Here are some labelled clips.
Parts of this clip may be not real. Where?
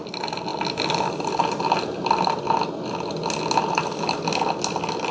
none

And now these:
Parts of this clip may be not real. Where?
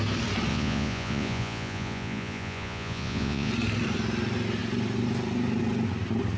0.5-3.5 (vocoder, Vocos)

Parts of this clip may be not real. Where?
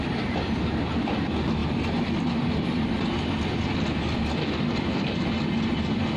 none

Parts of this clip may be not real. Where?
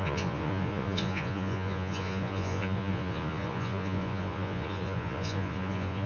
0.0-6.1 (vocoder, Vocos)